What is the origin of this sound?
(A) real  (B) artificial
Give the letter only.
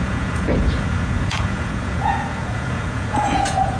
B